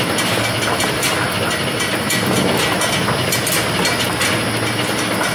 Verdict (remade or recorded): recorded